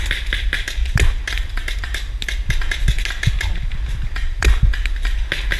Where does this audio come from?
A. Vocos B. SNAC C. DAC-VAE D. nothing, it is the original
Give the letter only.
D